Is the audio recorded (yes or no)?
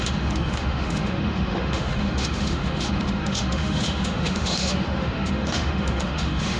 no